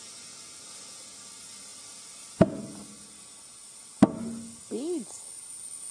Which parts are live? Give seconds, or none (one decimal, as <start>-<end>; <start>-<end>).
0.0-5.9